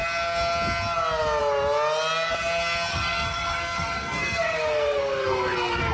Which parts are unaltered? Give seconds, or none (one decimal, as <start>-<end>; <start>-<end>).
0.0-2.9